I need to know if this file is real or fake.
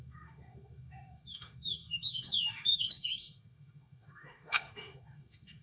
fake